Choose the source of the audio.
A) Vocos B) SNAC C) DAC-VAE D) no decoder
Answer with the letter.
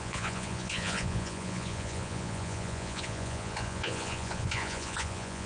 A